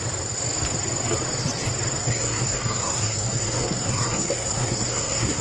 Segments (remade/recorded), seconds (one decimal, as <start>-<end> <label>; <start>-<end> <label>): 0.0-2.0 recorded; 2.0-5.4 remade